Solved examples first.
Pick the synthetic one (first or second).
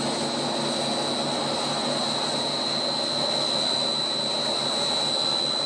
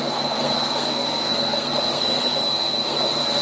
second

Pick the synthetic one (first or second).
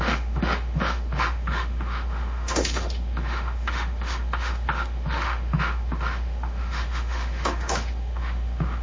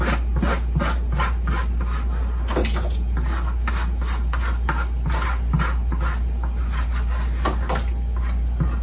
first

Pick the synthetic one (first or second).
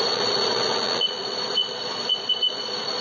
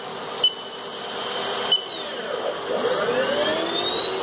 first